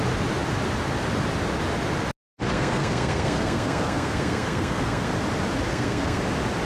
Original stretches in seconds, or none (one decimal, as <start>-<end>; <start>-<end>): 0.0-2.5; 5.1-5.7; 6.2-6.7